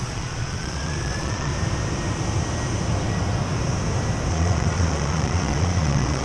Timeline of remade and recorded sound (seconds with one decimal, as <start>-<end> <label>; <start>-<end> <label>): 0.0-1.5 remade; 1.5-4.3 recorded; 4.3-6.2 remade